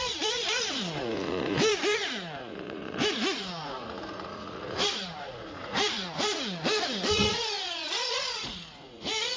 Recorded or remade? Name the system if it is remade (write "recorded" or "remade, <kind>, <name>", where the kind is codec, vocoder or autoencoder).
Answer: remade, vocoder, Vocos